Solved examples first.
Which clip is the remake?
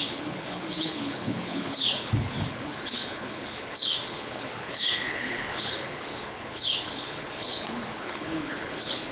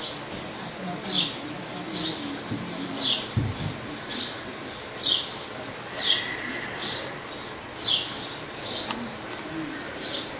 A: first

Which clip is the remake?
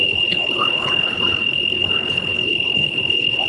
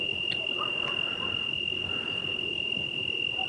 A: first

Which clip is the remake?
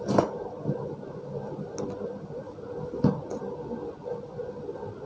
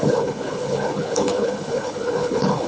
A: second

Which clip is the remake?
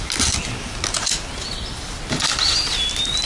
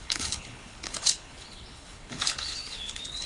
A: second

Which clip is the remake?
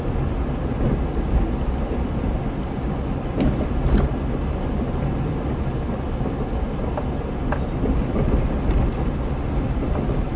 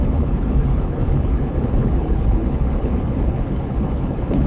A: second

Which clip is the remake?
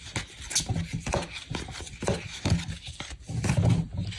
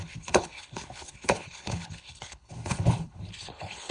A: second